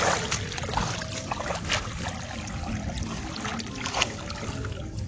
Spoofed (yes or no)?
no